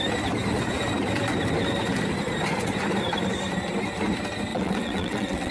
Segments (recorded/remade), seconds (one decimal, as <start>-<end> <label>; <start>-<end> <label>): 0.0-4.5 recorded; 4.5-5.5 remade